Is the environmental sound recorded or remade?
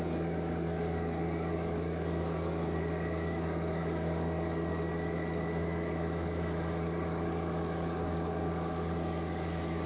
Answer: remade